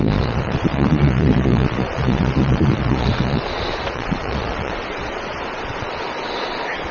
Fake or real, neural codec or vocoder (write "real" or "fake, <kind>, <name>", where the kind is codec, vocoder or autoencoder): fake, vocoder, Vocos